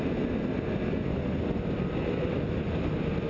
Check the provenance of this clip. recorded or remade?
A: recorded